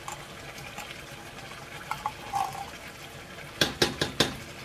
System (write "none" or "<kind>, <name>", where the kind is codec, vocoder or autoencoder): none